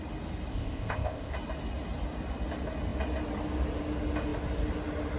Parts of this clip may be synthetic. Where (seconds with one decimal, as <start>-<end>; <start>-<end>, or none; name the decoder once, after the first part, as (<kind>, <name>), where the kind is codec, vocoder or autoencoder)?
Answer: 0.5-1.3 (codec, ZipCodec)